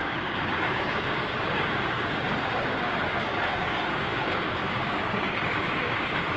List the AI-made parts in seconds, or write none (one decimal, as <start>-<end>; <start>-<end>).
0.0-6.4

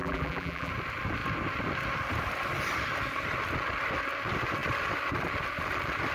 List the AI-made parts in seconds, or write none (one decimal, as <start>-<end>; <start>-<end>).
0.0-0.7